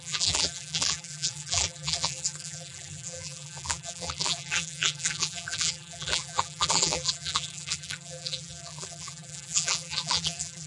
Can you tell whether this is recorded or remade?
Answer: remade